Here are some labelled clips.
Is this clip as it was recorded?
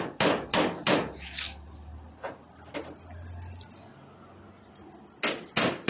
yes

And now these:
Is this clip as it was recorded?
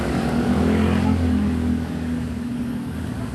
no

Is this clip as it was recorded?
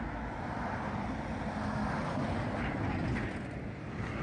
yes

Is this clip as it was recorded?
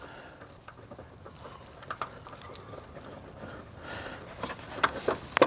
yes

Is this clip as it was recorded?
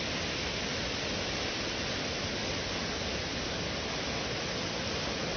yes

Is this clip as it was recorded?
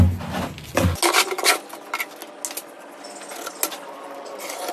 yes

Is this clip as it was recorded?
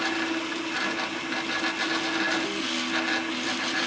yes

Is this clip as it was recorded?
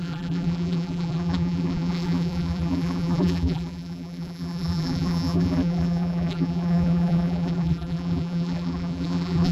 no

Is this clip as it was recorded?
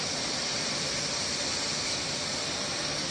yes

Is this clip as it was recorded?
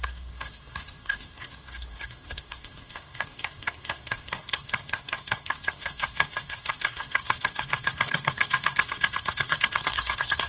no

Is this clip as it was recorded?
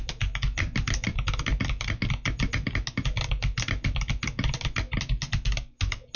yes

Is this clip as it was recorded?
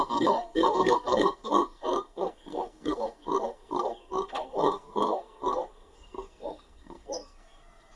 no